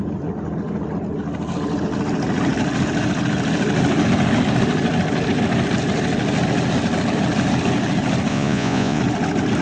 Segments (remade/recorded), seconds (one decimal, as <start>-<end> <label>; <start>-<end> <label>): 0.0-8.3 recorded; 8.3-9.0 remade; 9.0-9.6 recorded

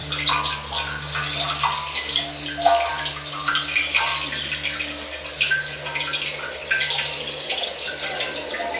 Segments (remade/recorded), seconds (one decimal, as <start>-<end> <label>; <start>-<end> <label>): 0.0-8.8 recorded